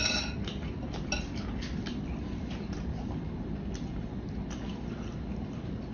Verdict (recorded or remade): recorded